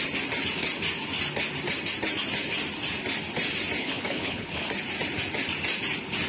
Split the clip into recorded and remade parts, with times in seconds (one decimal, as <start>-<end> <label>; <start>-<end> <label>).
0.0-3.8 recorded; 3.8-4.6 remade; 4.6-6.3 recorded